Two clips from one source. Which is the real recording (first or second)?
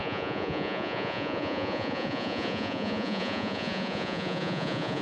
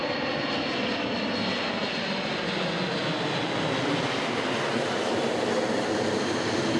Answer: second